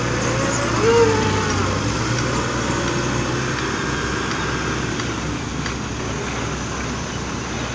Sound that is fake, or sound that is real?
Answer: real